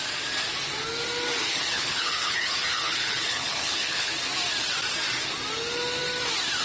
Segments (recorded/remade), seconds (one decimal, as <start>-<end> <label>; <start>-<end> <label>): 0.0-1.4 recorded; 1.4-4.1 remade; 4.1-6.6 recorded